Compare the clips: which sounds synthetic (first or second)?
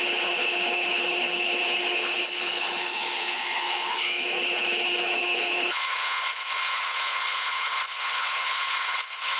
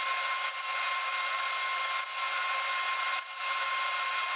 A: first